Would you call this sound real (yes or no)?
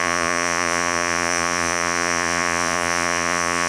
no